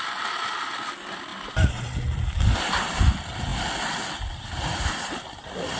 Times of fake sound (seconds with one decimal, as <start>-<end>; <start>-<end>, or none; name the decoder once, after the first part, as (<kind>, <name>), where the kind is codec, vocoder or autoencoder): none